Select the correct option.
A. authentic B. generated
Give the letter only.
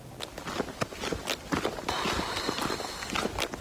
A